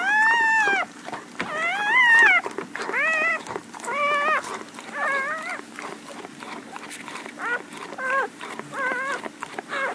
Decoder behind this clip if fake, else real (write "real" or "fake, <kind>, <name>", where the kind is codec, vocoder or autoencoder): real